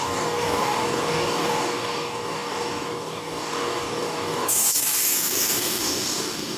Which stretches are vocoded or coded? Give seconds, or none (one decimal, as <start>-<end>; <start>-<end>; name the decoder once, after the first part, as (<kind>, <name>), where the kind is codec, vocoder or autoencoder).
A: 0.0-6.6 (codec, DAC)